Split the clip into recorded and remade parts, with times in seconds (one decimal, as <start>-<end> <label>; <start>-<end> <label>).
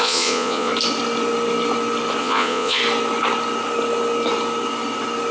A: 0.0-0.7 remade; 0.7-2.2 recorded; 2.2-2.8 remade; 2.8-5.3 recorded